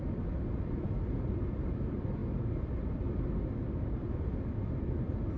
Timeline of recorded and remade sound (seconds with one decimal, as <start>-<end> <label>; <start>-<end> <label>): 0.0-5.4 recorded